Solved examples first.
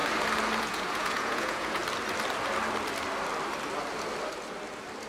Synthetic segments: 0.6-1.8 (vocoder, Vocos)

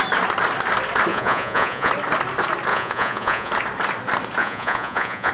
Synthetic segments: 1.1-1.9 (vocoder, Vocos); 2.7-3.5; 4.4-5.3